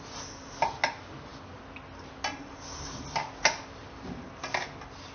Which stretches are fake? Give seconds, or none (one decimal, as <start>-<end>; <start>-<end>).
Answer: none